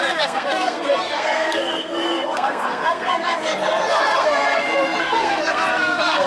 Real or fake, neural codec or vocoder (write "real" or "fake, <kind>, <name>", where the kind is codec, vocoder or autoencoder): fake, codec, SNAC